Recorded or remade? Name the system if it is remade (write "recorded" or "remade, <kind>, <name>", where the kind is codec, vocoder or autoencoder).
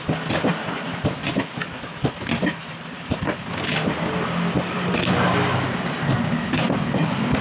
recorded